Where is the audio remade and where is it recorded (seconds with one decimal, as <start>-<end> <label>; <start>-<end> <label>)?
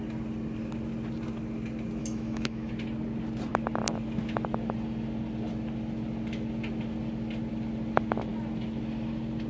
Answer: 0.0-2.0 recorded; 2.0-2.7 remade; 2.7-9.5 recorded